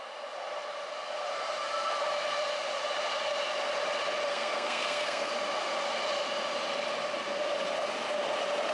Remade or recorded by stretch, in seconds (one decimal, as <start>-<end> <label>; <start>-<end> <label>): 0.0-4.3 recorded; 4.3-5.3 remade; 5.3-8.7 recorded